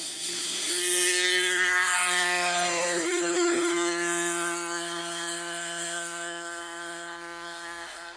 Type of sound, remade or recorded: remade